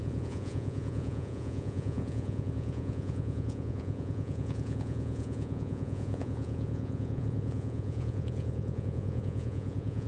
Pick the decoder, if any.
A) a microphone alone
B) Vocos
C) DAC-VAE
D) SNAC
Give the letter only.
B